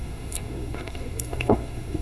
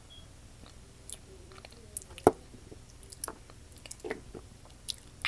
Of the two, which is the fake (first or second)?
first